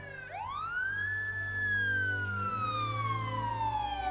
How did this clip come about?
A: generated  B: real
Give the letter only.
B